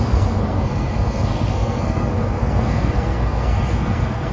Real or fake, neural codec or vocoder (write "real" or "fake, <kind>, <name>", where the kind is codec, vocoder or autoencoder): fake, codec, SNAC